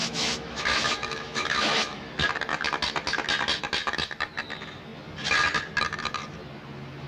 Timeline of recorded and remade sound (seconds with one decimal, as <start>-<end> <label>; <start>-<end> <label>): 0.0-2.1 remade; 2.1-7.1 recorded